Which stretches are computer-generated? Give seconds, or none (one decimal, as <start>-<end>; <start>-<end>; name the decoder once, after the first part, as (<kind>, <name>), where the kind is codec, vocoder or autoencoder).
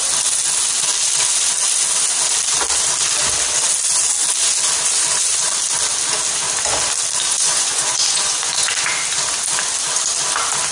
7.3-8.7 (vocoder, Vocos)